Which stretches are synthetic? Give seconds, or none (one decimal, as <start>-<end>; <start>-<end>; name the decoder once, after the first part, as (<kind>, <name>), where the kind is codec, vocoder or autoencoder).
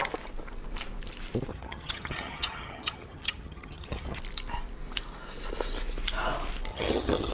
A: 1.5-4.2 (vocoder, HiFi-GAN); 6.7-7.3